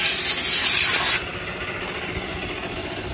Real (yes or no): yes